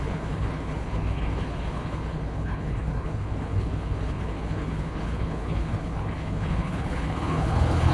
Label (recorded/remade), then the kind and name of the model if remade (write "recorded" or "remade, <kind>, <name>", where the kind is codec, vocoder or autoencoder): remade, codec, HILCodec